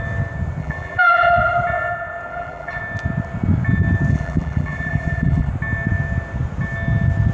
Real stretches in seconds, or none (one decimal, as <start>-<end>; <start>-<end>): 0.0-0.6; 1.3-2.3; 2.8-4.1; 5.5-7.3